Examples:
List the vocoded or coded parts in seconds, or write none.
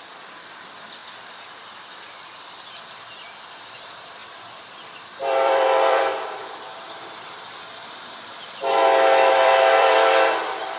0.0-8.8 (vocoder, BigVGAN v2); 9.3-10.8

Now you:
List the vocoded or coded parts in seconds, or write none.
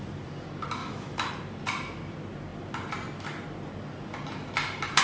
0.8-1.3 (autoencoder, DAC-VAE)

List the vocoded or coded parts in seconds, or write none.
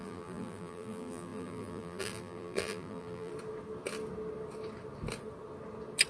0.0-3.3 (vocoder, BigVGAN v2)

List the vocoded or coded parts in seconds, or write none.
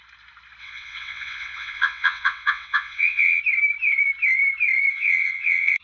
0.6-3.4 (vocoder, WaveNeXt); 4.9-5.8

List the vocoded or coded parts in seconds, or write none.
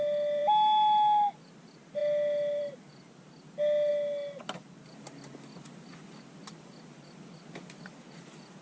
none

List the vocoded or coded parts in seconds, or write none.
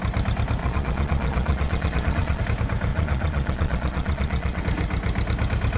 0.6-2.4 (vocoder, Vocos); 2.9-4.6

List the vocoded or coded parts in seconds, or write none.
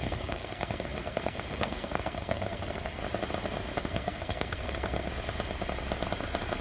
0.0-3.0 (codec, SNAC); 3.8-5.1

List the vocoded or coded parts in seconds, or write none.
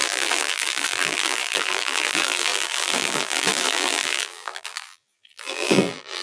0.0-6.2 (vocoder, BigVGAN v2)